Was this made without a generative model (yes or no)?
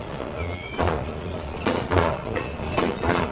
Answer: no